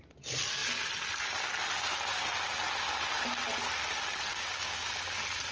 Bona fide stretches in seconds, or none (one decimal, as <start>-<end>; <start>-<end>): 0.0-4.3; 4.9-5.5

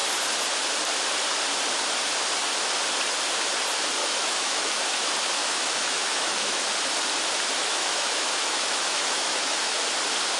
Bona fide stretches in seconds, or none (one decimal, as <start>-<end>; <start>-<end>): 0.0-4.0; 4.8-5.4; 6.6-7.6; 9.8-10.4